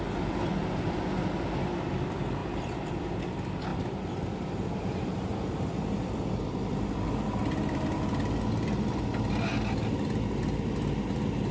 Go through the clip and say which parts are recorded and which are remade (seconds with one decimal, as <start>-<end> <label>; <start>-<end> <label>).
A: 0.0-2.4 recorded; 2.4-3.2 remade; 3.2-3.7 recorded; 3.7-4.8 remade; 4.8-11.5 recorded